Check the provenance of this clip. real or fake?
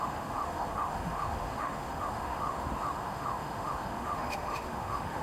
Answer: fake